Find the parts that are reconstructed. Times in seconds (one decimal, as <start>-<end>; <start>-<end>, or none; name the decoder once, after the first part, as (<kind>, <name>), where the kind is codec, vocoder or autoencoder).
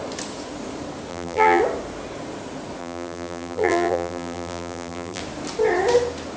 1.1-1.6 (vocoder, BigVGAN v2); 2.8-5.2